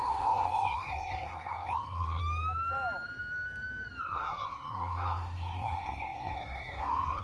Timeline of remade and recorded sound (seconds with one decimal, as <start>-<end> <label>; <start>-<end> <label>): 0.0-2.2 remade; 2.2-4.0 recorded; 4.0-7.2 remade